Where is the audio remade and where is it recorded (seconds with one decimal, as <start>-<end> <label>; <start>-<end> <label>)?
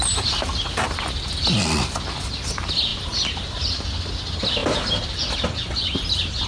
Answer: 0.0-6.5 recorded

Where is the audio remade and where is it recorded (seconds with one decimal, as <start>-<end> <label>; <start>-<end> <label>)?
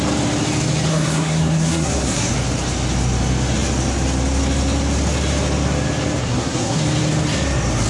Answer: 0.0-0.9 recorded; 0.9-2.3 remade; 2.3-6.2 recorded; 6.2-6.8 remade; 6.8-7.9 recorded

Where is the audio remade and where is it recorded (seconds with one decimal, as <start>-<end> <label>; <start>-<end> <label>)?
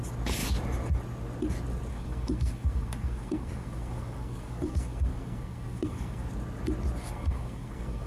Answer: 0.0-1.9 recorded; 1.9-6.3 remade; 6.3-7.0 recorded; 7.0-8.1 remade